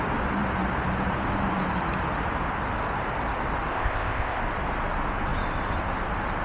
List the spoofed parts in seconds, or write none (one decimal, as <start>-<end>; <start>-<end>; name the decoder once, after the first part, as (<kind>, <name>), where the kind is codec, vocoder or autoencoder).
3.7-4.4 (codec, ZipCodec)